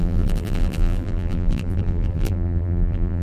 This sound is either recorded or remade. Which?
remade